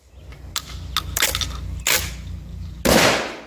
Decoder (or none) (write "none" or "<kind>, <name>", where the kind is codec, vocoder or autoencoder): none